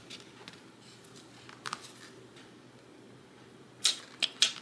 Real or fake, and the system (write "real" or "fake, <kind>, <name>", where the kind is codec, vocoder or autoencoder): real